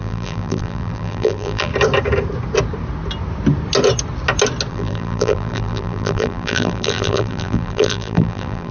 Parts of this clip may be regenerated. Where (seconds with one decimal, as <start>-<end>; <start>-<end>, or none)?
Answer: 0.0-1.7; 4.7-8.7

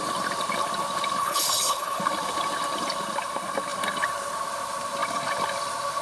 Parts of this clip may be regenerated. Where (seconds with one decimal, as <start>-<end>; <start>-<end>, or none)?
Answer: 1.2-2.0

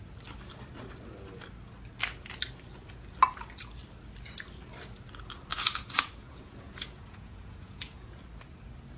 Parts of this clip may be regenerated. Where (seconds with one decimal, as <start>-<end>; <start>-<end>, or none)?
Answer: 5.5-8.2